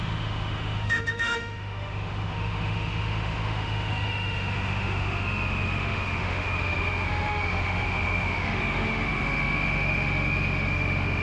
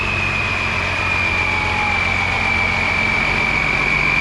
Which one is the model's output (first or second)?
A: first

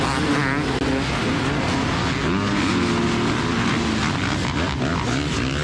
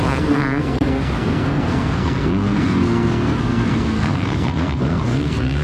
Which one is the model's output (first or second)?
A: second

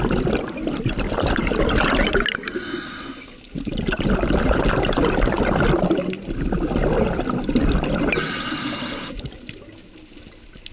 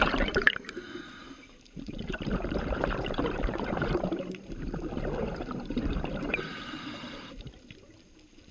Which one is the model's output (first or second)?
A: second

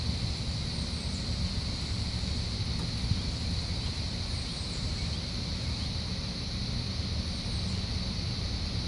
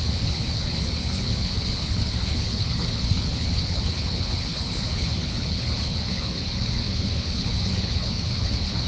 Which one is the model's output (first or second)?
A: second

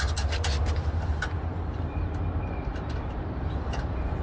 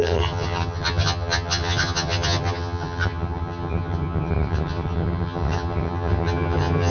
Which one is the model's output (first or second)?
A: second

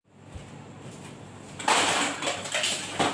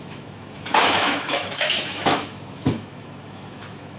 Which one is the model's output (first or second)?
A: second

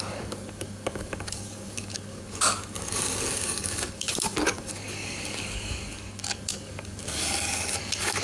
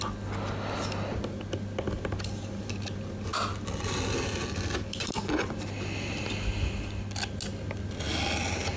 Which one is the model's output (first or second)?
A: first